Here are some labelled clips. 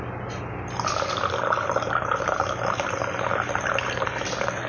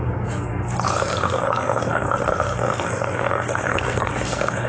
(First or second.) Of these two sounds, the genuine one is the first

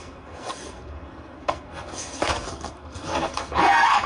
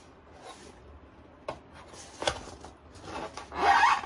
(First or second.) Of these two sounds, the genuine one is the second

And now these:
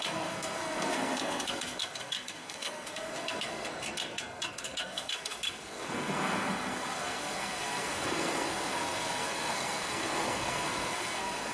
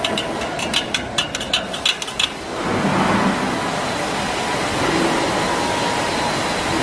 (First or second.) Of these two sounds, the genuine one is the second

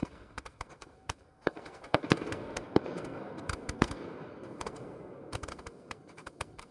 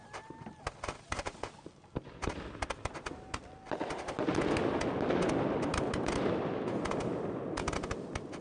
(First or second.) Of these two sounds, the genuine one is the second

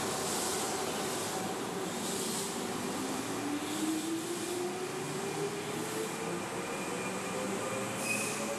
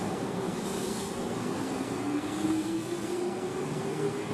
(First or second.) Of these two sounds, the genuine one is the first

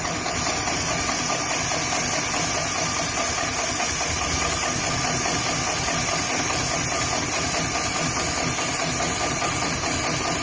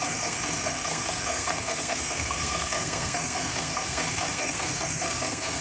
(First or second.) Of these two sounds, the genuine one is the first